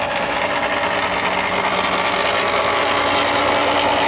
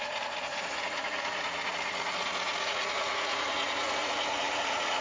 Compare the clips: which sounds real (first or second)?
first